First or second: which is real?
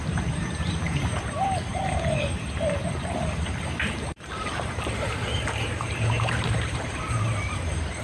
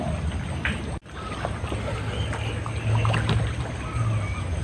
second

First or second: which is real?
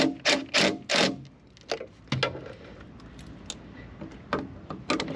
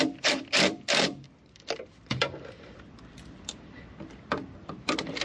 first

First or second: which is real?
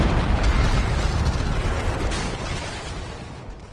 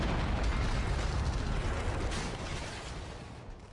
second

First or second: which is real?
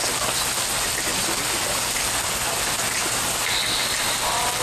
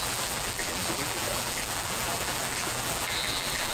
first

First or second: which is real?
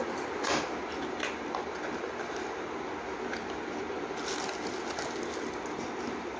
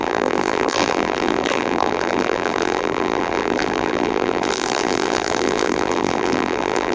first